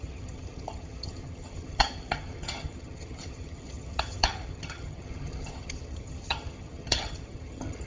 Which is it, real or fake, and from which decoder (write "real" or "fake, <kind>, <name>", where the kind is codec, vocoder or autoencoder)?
fake, vocoder, HiFi-GAN